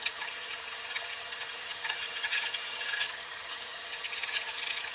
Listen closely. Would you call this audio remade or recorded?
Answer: remade